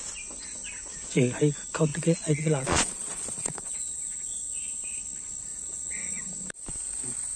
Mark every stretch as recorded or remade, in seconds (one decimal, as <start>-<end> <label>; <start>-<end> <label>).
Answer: 0.0-1.9 recorded; 1.9-5.0 remade; 5.0-5.5 recorded; 5.5-6.2 remade; 6.2-7.4 recorded